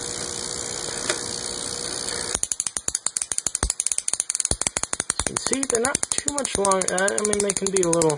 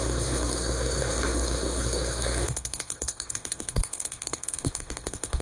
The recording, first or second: first